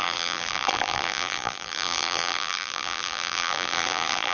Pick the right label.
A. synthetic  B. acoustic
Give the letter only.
A